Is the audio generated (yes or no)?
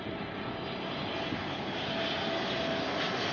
no